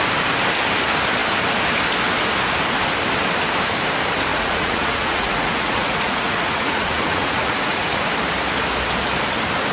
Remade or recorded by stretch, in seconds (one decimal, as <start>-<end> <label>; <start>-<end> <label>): 0.0-4.3 recorded; 4.3-8.0 remade; 8.0-9.7 recorded